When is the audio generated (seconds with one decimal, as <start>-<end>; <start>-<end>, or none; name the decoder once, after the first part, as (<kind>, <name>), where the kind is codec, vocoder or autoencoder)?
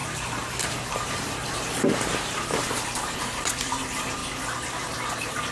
0.0-4.2 (vocoder, BigVGAN v2); 5.1-5.5